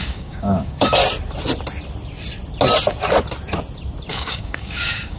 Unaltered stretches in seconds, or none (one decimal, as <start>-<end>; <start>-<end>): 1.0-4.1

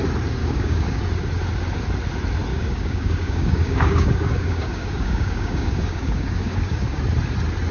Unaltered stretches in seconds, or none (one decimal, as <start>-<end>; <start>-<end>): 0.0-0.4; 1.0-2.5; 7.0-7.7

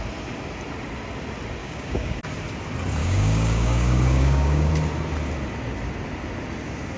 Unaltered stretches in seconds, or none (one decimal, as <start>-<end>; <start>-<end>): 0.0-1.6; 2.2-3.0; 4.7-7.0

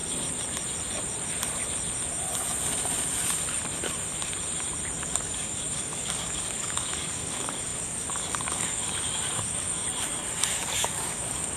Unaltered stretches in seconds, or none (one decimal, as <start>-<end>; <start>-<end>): 0.0-5.0; 9.8-10.5

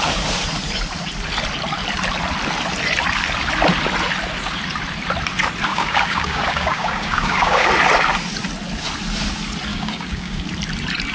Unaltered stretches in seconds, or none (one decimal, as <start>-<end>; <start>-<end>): 0.0-5.7; 7.7-9.7; 10.4-11.1

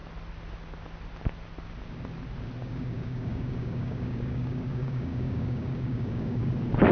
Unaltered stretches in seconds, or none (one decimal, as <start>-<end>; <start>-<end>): 0.0-2.6; 6.5-6.9